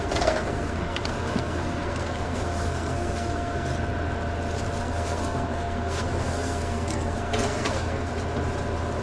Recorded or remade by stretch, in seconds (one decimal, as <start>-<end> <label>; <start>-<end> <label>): 0.0-3.7 remade; 3.7-4.8 recorded; 4.8-8.1 remade; 8.1-9.0 recorded